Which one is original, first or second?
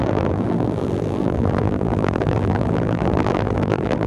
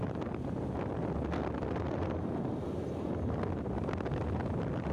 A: second